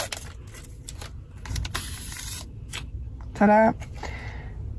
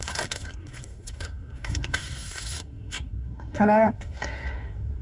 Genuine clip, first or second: first